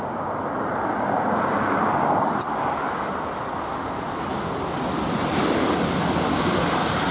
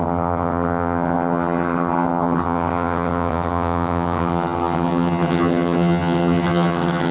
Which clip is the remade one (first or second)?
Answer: second